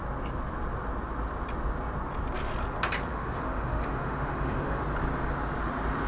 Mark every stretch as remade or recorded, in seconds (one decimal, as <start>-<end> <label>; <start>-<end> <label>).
0.0-3.1 recorded; 3.1-4.8 remade; 4.8-6.1 recorded